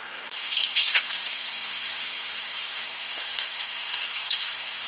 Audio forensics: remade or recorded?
remade